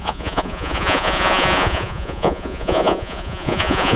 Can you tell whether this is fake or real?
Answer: fake